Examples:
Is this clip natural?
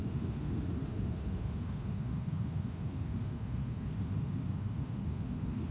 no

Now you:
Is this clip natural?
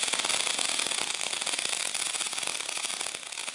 yes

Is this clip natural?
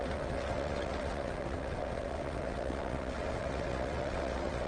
no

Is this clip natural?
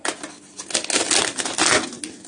yes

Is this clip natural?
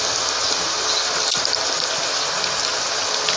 yes